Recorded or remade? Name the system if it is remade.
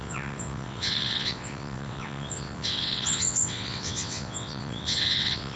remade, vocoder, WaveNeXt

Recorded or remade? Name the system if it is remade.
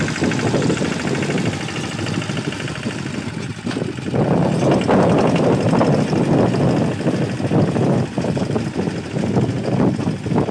recorded